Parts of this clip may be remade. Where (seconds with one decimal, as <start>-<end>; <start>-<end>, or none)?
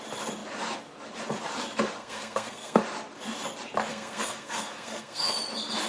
2.0-2.8; 3.9-5.3